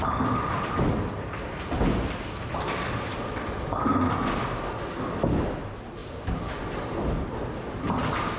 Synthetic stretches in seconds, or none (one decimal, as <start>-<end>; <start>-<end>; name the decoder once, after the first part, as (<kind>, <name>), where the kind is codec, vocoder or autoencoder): none